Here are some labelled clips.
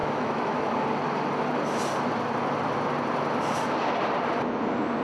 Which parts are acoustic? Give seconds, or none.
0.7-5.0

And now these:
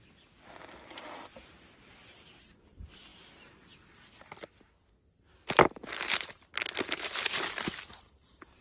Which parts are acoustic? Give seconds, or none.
3.1-6.4

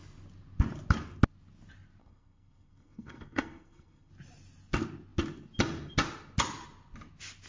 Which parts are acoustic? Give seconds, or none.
0.0-2.0; 4.1-7.5

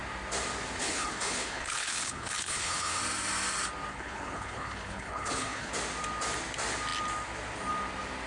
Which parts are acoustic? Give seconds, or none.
0.0-0.8; 3.0-3.9; 5.7-8.3

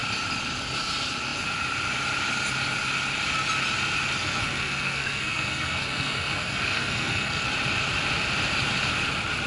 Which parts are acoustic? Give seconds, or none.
0.0-4.2; 7.5-9.5

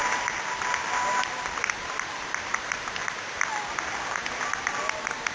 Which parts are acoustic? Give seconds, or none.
0.0-5.3